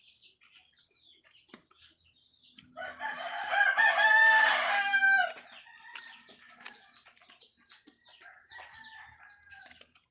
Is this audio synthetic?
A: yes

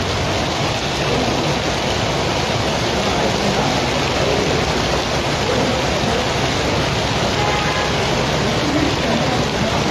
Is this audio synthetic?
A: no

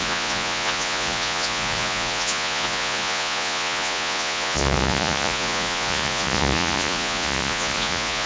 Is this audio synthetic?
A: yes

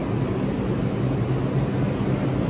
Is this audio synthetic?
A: no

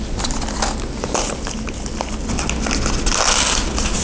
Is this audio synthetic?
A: no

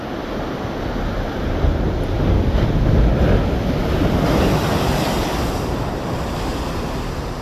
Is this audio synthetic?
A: no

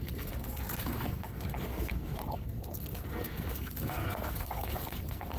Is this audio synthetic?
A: yes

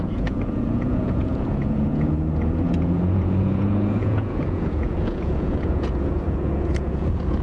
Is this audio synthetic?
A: yes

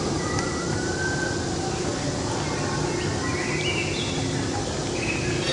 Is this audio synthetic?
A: no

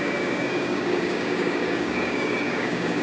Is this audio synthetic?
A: yes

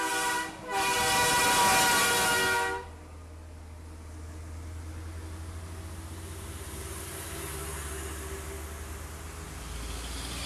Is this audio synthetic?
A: no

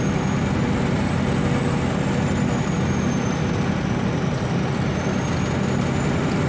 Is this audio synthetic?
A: no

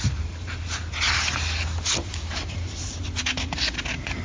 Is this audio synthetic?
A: no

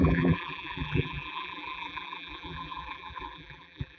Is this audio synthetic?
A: yes